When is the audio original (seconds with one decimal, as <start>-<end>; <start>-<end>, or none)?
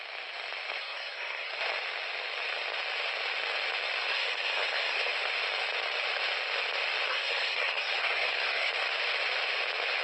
0.0-0.8; 1.5-4.1; 5.1-7.1; 8.7-10.0